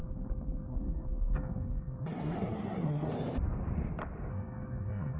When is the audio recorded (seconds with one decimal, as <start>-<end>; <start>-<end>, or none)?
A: 3.1-4.3